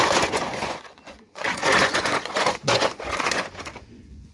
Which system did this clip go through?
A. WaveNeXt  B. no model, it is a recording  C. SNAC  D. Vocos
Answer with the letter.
D